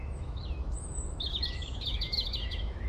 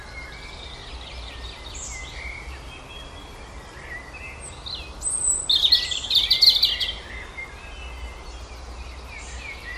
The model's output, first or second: first